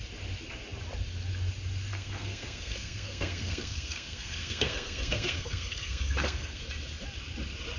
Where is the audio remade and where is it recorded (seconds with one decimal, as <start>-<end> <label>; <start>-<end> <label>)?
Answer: 0.0-1.9 recorded; 1.9-6.6 remade; 6.6-7.8 recorded